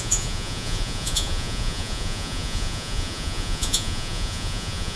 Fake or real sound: fake